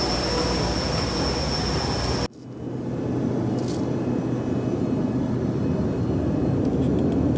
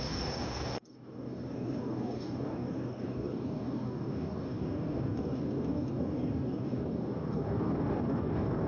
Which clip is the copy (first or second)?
second